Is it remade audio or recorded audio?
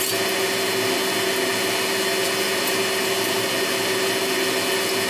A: recorded